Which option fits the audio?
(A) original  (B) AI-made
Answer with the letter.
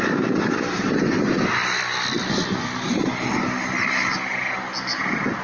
A